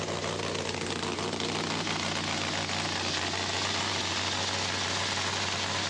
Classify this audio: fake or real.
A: real